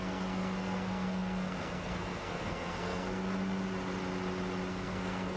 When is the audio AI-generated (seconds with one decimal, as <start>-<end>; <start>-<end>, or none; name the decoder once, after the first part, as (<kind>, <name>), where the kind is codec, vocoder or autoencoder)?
0.0-3.2 (codec, SNAC); 4.7-5.4